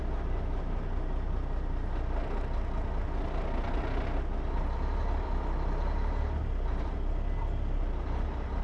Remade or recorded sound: recorded